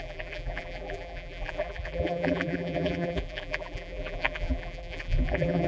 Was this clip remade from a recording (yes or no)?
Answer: yes